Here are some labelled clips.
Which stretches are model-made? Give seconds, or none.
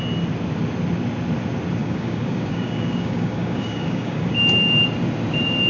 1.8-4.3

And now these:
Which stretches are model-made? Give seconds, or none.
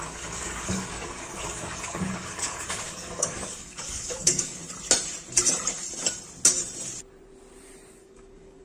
0.0-4.6; 7.9-8.6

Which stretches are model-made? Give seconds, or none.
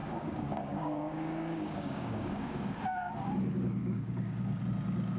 0.0-3.1; 3.8-4.6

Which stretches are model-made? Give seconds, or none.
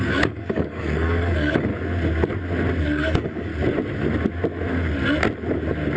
0.0-1.7; 2.8-3.5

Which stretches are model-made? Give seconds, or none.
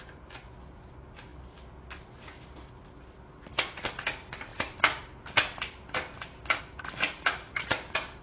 none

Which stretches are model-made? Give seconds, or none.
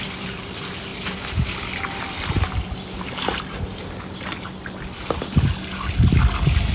none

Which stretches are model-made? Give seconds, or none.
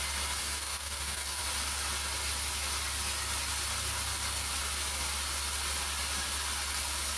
0.4-1.4